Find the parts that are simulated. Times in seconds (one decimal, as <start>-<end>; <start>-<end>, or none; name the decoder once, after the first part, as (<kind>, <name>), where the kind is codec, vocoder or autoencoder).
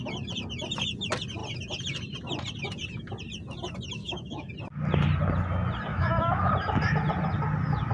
4.0-4.5 (autoencoder, DAC-VAE); 5.9-6.5